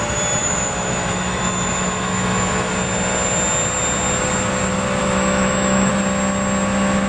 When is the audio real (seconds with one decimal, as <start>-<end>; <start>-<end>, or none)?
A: 0.0-0.4; 2.7-5.0; 5.9-7.1